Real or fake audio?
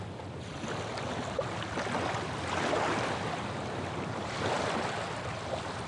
real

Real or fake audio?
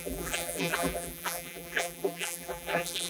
fake